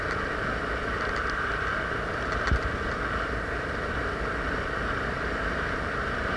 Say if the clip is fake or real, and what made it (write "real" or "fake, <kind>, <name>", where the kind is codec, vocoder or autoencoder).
real